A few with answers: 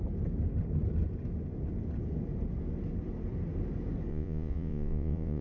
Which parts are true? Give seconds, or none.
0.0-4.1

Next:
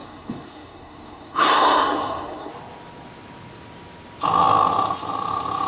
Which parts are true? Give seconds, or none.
2.5-5.7

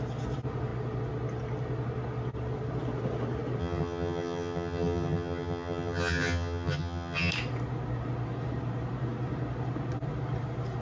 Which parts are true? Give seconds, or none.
0.0-3.6; 7.3-10.8